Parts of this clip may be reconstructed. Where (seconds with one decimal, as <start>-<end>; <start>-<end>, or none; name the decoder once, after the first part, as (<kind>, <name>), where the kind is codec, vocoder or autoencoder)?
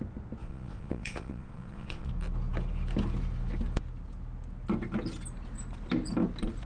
0.4-2.1 (vocoder, Vocos)